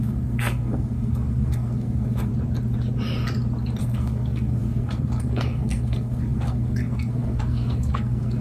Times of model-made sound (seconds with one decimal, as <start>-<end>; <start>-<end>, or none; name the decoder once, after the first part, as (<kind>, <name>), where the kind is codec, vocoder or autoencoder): 0.0-2.3 (codec, SNAC); 3.8-8.4